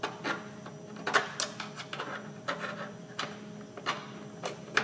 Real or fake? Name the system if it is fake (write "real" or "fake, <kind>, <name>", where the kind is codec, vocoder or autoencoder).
real